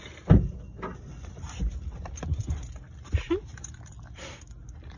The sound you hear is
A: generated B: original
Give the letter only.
B